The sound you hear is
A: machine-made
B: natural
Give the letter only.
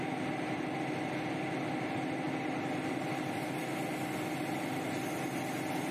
B